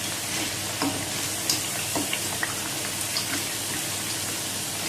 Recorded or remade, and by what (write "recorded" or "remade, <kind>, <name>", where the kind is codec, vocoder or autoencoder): recorded